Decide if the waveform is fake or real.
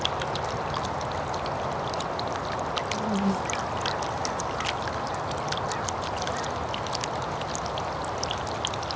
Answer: real